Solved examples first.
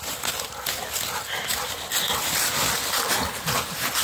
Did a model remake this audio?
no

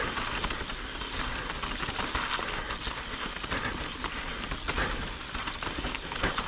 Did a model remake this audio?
no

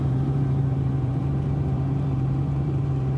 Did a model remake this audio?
yes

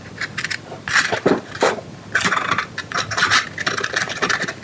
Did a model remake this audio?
no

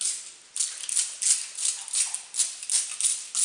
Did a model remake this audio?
no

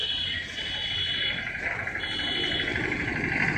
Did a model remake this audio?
no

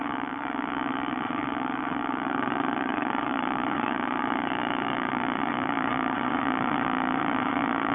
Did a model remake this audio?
yes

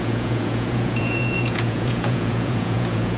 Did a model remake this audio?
yes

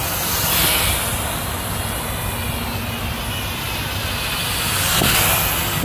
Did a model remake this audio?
no